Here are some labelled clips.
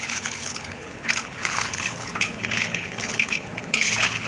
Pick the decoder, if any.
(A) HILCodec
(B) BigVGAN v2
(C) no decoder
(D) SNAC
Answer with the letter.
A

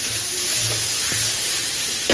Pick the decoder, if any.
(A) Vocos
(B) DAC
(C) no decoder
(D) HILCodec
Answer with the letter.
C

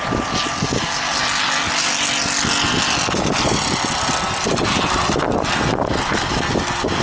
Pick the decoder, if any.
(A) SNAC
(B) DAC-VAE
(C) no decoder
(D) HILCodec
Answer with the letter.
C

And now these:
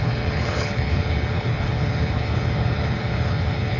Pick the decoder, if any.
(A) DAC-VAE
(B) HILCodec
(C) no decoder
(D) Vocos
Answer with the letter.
B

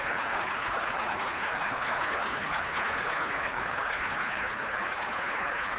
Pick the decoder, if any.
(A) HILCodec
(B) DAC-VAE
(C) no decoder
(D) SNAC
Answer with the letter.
A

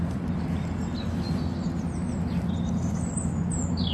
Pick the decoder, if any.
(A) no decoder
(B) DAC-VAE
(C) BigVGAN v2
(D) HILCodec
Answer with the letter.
A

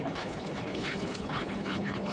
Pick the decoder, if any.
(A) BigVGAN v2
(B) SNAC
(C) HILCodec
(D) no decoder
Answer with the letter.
C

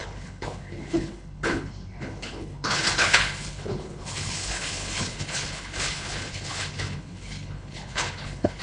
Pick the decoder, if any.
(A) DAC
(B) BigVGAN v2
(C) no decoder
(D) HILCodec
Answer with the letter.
D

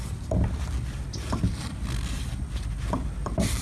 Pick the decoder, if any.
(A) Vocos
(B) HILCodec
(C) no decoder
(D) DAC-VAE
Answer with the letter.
C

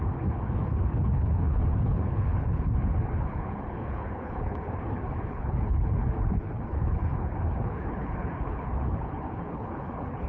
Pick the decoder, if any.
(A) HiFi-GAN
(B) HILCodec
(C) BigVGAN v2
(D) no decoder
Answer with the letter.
B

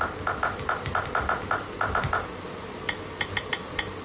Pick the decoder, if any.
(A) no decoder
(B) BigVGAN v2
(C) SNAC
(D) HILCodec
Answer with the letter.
A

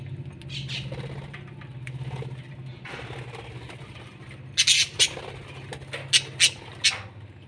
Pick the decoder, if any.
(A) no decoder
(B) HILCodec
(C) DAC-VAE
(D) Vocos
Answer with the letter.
A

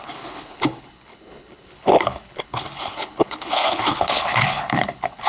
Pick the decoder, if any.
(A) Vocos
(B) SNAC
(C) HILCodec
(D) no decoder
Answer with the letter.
C